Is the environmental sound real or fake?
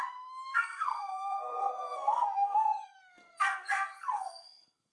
fake